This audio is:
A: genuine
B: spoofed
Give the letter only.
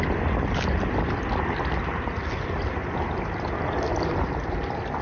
A